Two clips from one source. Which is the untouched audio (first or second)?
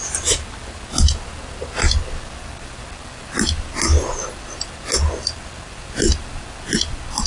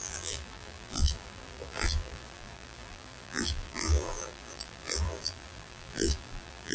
first